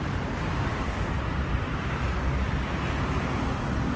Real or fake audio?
real